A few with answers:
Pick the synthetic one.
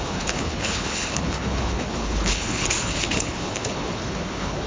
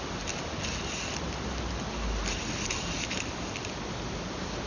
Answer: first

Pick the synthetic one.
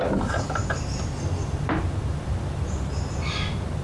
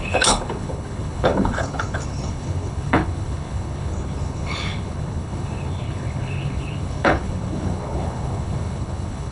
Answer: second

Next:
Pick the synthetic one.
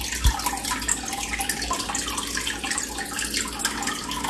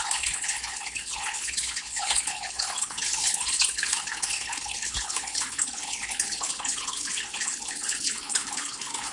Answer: second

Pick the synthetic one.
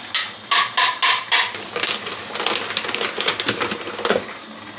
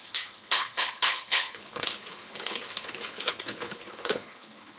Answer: second